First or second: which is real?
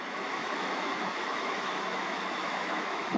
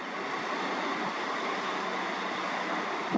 second